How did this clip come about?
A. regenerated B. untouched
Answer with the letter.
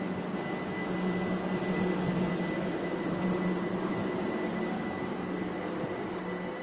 B